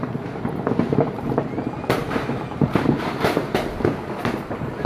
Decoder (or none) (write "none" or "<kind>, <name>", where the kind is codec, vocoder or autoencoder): none